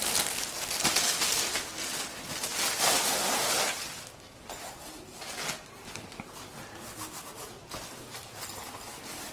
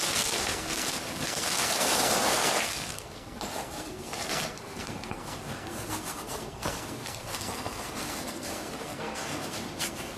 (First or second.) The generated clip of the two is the second